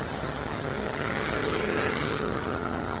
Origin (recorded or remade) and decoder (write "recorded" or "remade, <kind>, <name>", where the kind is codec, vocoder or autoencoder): remade, vocoder, HiFi-GAN